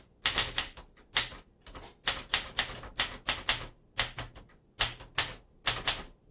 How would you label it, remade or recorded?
recorded